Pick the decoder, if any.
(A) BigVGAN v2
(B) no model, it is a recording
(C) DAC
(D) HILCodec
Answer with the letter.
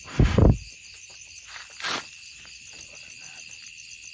B